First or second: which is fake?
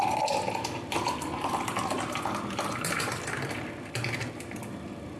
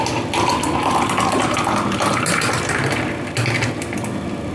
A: first